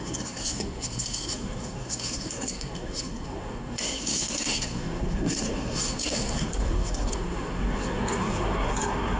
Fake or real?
fake